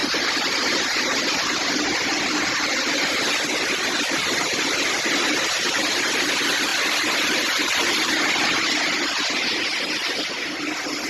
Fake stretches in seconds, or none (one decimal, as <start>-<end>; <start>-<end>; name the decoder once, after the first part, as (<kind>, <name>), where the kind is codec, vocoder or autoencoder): none